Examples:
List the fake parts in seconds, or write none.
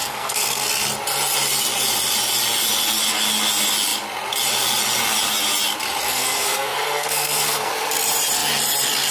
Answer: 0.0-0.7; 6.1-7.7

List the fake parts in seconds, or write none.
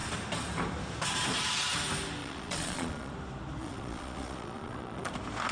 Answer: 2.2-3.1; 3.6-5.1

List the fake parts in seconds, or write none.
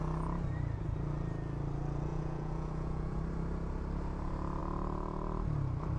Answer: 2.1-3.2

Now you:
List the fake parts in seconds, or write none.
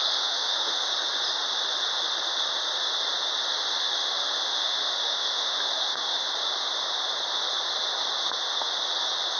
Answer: 0.0-0.9; 3.8-6.3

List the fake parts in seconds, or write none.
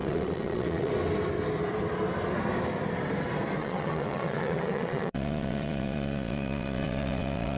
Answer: 0.0-0.9; 3.6-7.6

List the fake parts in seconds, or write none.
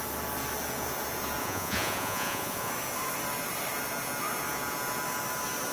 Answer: 1.4-2.7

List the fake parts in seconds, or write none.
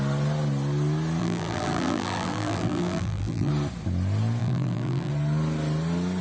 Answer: 1.2-3.5; 4.4-5.1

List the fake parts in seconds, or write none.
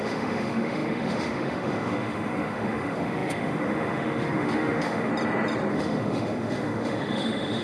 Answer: 0.0-5.1; 5.7-7.6